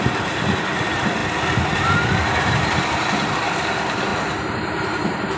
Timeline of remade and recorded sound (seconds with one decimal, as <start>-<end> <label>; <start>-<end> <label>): 0.0-1.2 remade; 1.2-2.4 recorded; 2.4-5.4 remade

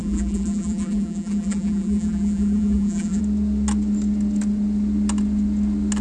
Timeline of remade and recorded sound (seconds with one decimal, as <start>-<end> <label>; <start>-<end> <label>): 0.0-3.2 remade; 3.2-6.0 recorded

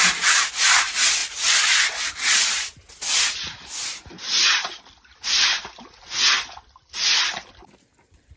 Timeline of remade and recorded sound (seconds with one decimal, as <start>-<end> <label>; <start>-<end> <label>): 0.0-1.2 recorded; 1.2-2.1 remade; 2.1-8.4 recorded

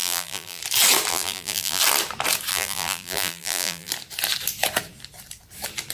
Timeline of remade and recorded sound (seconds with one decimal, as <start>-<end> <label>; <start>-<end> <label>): 0.0-0.6 remade; 0.6-1.1 recorded; 1.1-1.8 remade; 1.8-2.5 recorded; 2.5-3.9 remade; 3.9-5.9 recorded